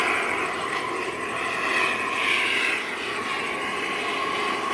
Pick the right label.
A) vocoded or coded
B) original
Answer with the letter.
B